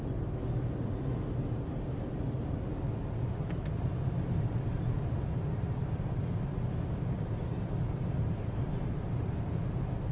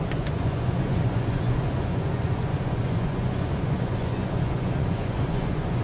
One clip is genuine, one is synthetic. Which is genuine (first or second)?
first